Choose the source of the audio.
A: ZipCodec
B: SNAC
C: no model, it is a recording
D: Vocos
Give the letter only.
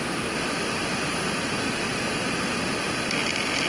C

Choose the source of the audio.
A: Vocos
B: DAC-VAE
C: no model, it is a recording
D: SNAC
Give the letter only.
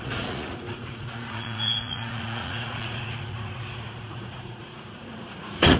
A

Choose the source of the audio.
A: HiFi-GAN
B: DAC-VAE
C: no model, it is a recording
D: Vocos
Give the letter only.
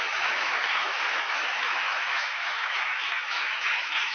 B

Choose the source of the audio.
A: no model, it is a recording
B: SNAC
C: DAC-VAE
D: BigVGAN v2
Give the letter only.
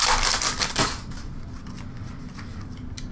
A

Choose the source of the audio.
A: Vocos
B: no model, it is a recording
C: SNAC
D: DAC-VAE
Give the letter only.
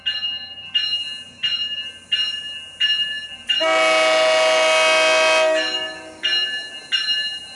B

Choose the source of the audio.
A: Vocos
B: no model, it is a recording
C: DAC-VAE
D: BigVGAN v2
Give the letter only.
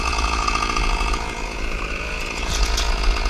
A